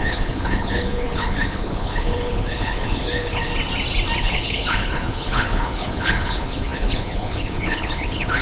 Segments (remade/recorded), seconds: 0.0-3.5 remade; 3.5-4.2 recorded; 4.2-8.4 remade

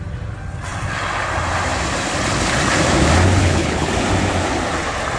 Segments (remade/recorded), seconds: 0.0-3.4 recorded; 3.4-3.9 remade; 3.9-5.2 recorded

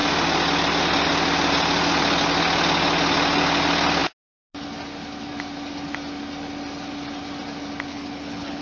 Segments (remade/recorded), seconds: 0.0-7.9 recorded; 7.9-8.6 remade

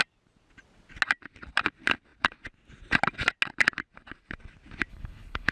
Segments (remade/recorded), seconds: 0.0-4.9 recorded; 4.9-5.5 remade